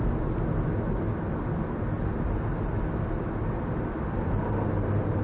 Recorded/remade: recorded